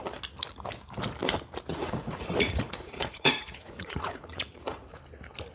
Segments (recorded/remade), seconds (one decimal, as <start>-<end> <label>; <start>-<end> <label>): 0.0-1.7 recorded; 1.7-5.0 remade; 5.0-5.5 recorded